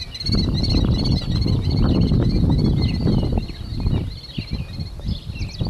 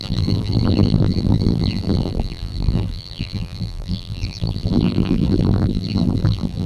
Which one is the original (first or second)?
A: first